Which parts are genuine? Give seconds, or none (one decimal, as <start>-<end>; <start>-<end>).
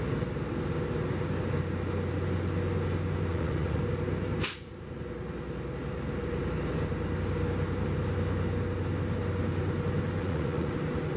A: 0.0-3.3; 3.8-10.2; 10.7-11.2